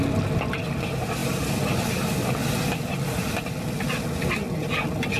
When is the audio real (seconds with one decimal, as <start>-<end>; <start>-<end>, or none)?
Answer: 0.0-5.2